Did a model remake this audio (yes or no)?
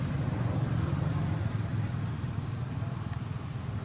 no